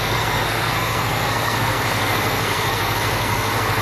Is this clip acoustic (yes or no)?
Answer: no